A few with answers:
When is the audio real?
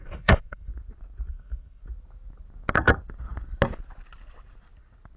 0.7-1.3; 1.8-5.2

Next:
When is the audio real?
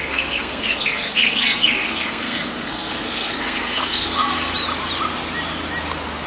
4.5-6.3